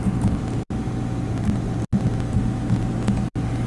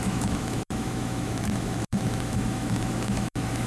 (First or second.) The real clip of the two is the first